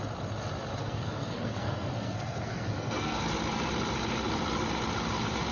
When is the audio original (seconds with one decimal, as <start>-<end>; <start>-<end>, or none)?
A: 0.0-0.8; 3.2-5.5